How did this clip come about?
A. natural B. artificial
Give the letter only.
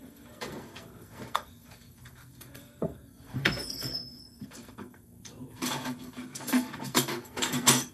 B